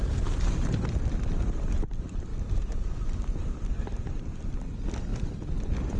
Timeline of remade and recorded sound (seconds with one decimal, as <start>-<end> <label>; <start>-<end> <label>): 0.0-6.0 recorded